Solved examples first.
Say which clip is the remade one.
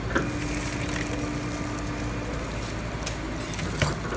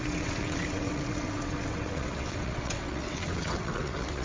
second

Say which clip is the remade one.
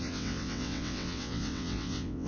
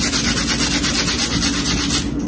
first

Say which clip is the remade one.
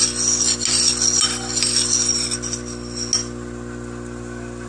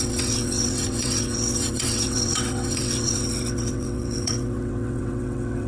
second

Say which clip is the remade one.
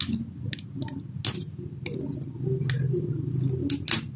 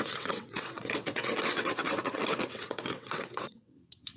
second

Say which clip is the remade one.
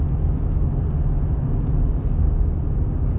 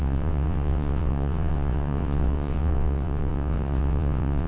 second